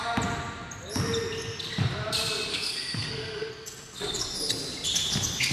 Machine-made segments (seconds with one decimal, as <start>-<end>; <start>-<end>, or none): 2.5-3.5